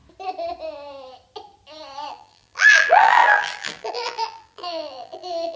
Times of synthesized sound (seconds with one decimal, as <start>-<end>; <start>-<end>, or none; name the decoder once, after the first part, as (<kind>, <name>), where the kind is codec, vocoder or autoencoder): 2.1-5.6 (vocoder, BigVGAN v2)

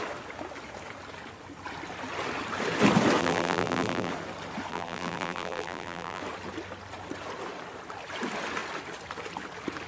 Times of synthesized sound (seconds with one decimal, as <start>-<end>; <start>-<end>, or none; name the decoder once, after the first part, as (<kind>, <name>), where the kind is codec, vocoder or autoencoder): 3.2-4.1 (vocoder, BigVGAN v2); 4.7-6.2

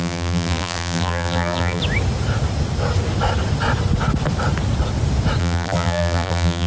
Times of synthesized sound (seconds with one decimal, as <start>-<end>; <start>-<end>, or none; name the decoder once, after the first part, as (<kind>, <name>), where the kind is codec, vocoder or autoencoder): 0.0-1.8 (vocoder, BigVGAN v2); 5.4-6.7

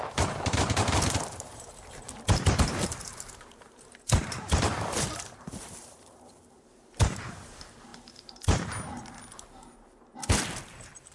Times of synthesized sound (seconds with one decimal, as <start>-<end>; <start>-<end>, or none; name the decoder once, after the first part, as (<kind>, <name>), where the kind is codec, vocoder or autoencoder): 0.0-10.1 (vocoder, BigVGAN v2); 10.6-11.1

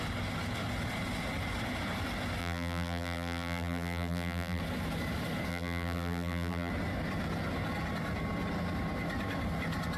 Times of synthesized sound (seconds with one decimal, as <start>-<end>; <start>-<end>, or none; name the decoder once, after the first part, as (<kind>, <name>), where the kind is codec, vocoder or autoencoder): 2.4-4.6 (vocoder, BigVGAN v2); 5.5-6.7

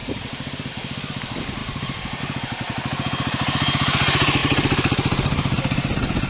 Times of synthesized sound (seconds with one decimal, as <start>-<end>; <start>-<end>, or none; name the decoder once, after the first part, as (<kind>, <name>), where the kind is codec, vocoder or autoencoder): 0.0-0.7 (vocoder, BigVGAN v2); 1.6-2.2; 4.4-6.3

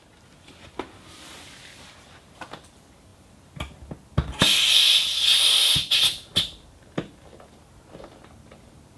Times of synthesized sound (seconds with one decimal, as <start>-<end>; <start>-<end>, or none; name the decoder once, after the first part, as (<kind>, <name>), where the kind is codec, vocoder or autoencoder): none

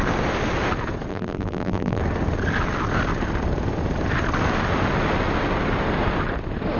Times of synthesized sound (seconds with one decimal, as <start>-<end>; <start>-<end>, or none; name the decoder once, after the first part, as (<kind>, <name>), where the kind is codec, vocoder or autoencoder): 1.1-2.0 (vocoder, BigVGAN v2)